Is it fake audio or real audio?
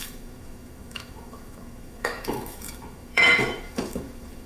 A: fake